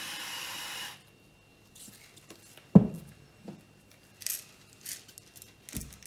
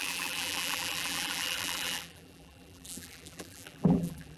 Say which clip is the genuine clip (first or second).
first